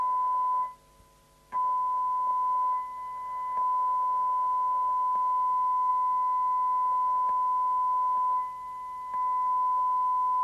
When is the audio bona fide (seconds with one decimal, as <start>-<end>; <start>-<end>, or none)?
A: 0.0-10.4